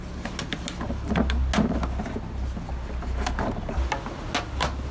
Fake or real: real